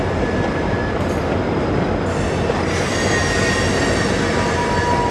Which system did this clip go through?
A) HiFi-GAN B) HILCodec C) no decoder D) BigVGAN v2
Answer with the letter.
C